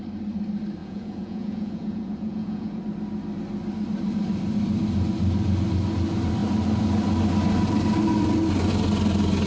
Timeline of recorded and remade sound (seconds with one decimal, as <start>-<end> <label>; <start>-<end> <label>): 0.0-0.8 recorded; 0.8-2.8 remade; 2.8-9.5 recorded